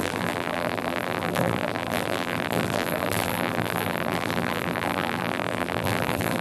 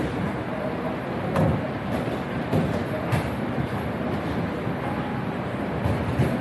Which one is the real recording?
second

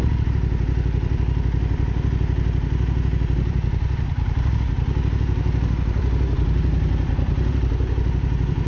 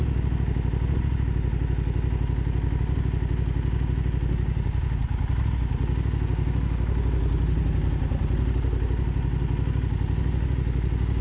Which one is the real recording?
second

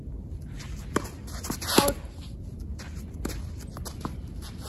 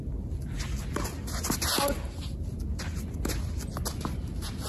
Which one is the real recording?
second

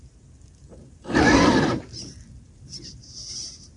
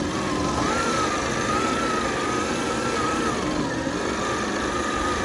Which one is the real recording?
second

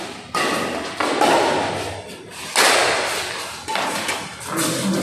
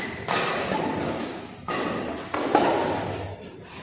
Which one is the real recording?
first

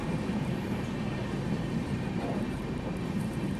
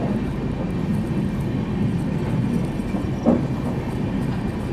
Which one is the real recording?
second